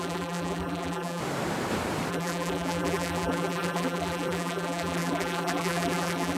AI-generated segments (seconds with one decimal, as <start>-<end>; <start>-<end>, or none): 0.0-1.2; 2.1-6.4